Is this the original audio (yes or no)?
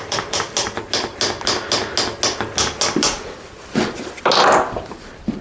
yes